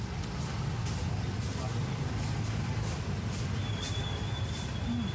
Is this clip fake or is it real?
real